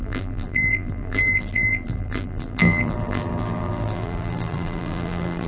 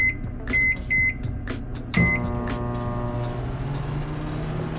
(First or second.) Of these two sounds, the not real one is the first